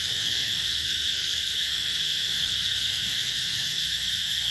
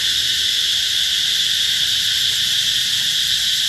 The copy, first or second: first